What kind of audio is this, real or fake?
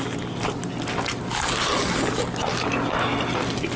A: real